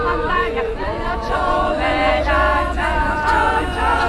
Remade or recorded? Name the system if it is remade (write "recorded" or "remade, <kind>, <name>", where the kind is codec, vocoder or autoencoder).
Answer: remade, vocoder, Vocos